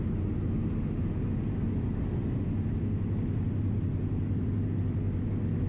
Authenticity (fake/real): real